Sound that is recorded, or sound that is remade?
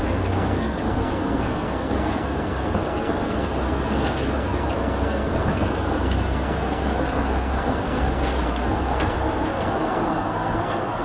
remade